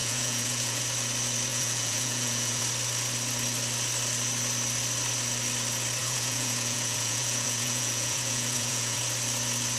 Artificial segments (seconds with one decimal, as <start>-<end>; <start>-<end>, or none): 0.0-0.8; 1.5-2.6; 6.0-9.0